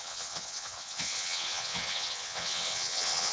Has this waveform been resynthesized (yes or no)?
yes